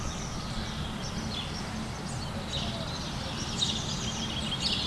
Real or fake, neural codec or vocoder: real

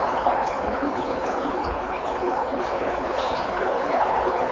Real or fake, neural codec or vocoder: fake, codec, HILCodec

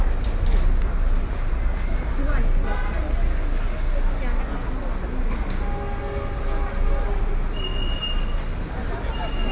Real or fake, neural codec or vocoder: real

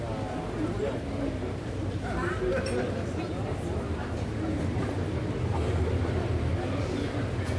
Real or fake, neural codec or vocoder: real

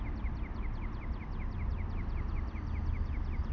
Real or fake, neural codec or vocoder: real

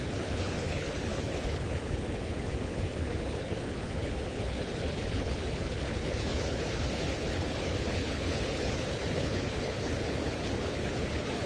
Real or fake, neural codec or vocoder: fake, codec, HILCodec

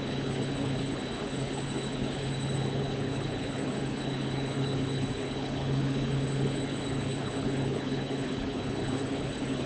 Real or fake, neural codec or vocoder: fake, codec, HILCodec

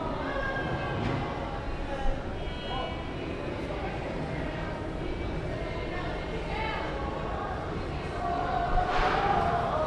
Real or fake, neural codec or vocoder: real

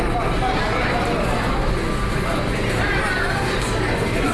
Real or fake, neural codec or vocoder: real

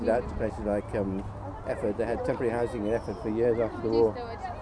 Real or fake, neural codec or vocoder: real